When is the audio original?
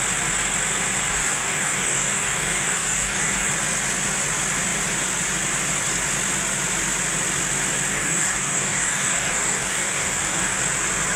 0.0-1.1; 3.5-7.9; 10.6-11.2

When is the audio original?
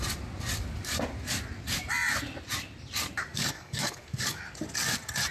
0.0-3.3; 4.4-5.3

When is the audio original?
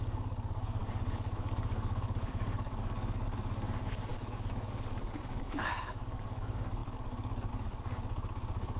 none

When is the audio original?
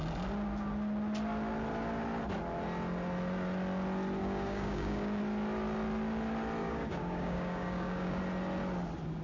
0.0-4.2; 5.2-6.6; 8.2-9.2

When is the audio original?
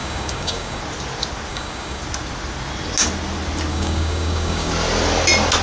0.8-1.5; 2.0-3.7; 4.7-5.6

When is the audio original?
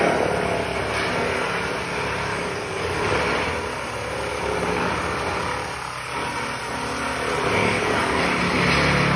0.0-2.3; 3.2-4.3; 4.9-7.6; 8.2-9.2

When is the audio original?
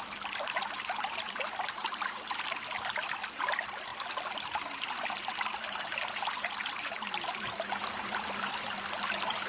0.0-9.5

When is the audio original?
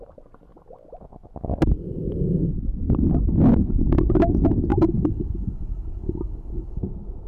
0.0-4.7; 6.8-7.3